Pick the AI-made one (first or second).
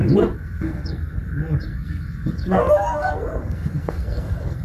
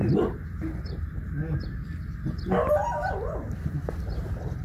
first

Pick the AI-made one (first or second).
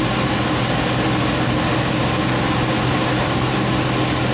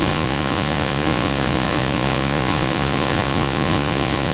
second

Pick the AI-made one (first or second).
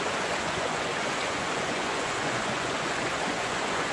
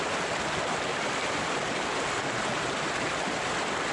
first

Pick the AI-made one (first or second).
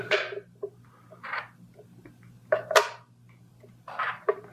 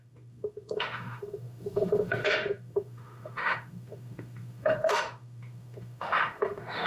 second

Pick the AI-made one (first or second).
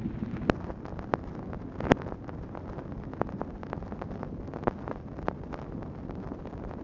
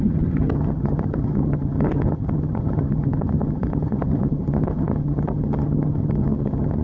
second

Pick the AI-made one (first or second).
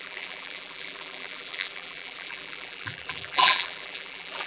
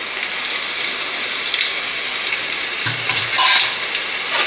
first